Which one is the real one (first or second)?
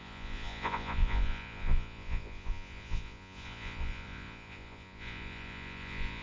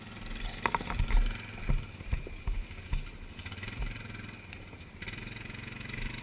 second